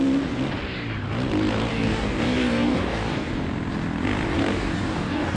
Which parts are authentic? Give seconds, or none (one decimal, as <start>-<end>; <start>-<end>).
0.0-1.7; 3.3-4.4